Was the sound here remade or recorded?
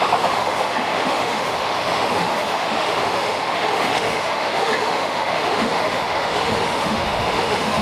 remade